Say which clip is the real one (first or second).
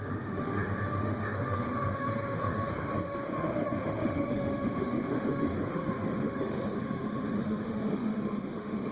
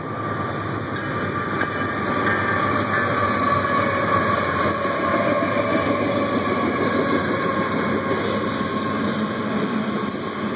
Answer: second